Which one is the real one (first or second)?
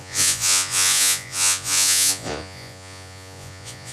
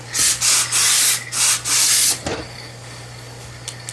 second